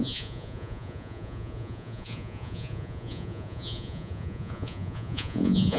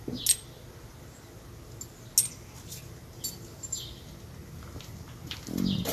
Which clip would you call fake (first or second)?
first